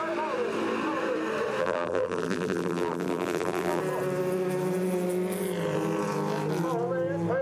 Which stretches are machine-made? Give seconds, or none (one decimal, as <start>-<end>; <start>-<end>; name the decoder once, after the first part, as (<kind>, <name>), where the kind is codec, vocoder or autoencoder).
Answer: 1.6-3.8 (vocoder, BigVGAN v2)